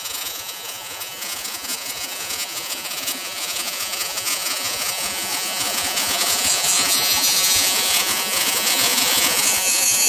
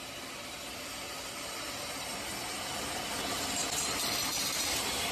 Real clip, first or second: second